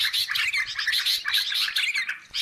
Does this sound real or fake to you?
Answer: real